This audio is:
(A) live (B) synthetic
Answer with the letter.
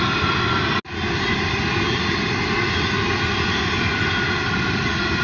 A